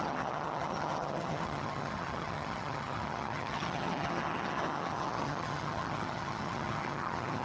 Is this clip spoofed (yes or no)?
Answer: yes